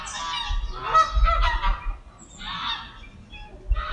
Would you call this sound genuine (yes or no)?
yes